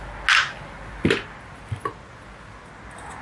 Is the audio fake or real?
real